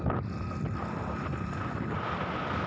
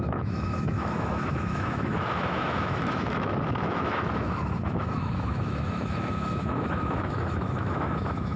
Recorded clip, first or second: first